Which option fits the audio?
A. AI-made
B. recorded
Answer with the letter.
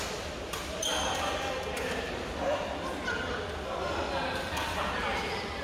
B